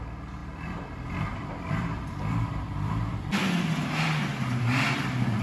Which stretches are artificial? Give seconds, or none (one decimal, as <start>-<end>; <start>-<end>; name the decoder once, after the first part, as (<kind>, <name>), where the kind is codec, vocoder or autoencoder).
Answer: 0.4-3.3 (vocoder, BigVGAN v2)